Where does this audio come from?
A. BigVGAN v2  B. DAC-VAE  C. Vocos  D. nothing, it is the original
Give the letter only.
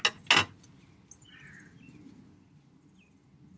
D